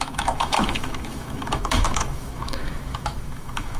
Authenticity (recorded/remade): remade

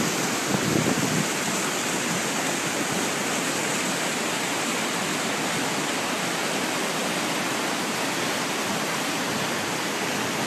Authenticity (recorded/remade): recorded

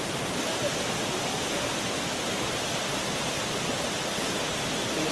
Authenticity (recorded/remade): recorded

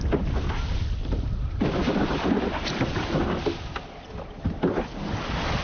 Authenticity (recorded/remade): recorded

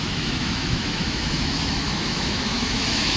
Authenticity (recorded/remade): remade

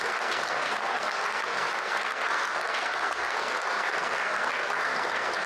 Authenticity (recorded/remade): remade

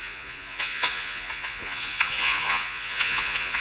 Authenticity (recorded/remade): remade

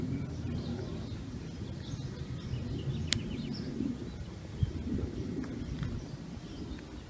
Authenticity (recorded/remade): recorded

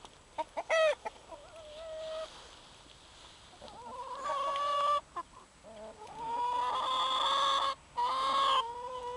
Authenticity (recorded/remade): recorded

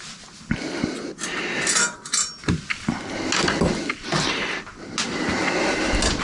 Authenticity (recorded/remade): recorded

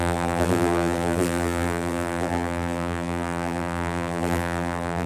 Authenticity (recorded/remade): remade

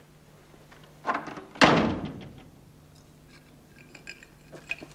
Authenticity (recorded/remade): recorded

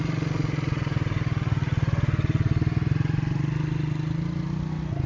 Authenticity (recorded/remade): recorded